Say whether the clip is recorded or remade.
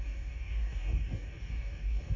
remade